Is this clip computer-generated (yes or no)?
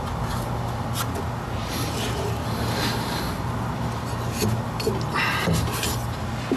no